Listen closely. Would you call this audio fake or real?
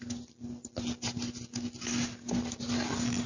real